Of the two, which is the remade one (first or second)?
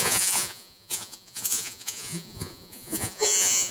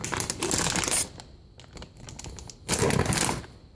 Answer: first